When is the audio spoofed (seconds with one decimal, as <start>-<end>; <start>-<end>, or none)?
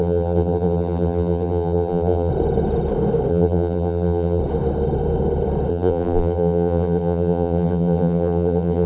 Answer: 0.0-2.3; 3.3-4.4; 5.7-8.9